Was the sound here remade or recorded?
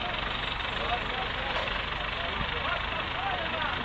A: recorded